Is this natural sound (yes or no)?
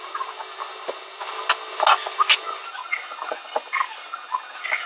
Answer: yes